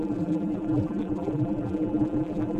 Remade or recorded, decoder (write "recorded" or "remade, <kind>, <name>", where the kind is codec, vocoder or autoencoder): remade, vocoder, BigVGAN v2